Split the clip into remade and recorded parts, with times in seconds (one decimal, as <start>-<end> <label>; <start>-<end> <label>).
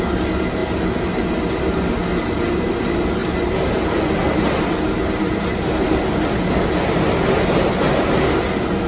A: 0.0-8.9 recorded